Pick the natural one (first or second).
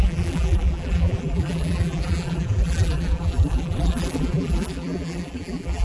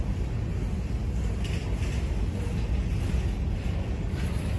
second